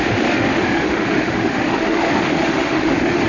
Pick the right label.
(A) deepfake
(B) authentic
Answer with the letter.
A